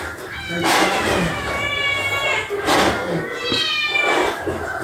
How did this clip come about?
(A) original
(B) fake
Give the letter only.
A